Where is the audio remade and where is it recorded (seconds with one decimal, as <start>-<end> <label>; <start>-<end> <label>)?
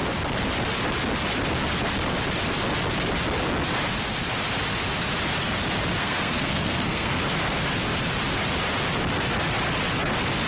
0.0-6.0 recorded; 6.0-7.2 remade; 7.2-10.5 recorded